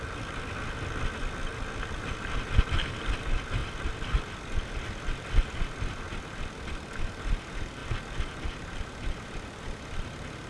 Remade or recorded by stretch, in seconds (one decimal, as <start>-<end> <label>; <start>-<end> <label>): 0.0-10.5 recorded